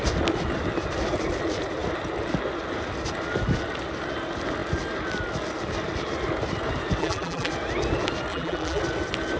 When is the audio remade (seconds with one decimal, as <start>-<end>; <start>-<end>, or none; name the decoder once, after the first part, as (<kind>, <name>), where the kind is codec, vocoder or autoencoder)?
7.0-7.5 (vocoder, BigVGAN v2); 8.3-8.8